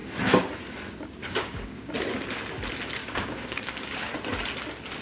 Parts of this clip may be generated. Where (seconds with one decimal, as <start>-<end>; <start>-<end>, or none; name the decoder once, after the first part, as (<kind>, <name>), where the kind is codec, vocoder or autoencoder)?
1.2-1.9 (codec, DAC); 3.0-4.1